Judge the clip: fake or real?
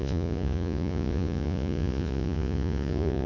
fake